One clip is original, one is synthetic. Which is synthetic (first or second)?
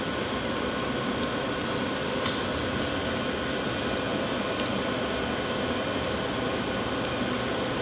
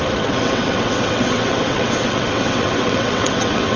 second